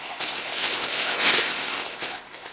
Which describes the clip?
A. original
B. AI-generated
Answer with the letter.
B